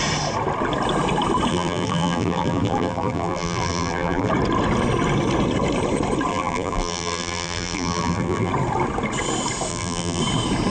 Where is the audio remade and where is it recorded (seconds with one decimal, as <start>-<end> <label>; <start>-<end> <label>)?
0.0-1.5 recorded; 1.5-4.3 remade; 4.3-6.3 recorded; 6.3-8.5 remade; 8.5-9.7 recorded; 9.7-10.2 remade; 10.2-10.7 recorded